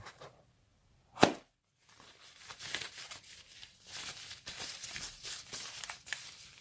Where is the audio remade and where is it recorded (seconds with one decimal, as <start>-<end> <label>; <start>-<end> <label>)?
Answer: 0.0-0.7 recorded; 0.7-1.4 remade; 1.4-2.5 recorded; 2.5-6.6 remade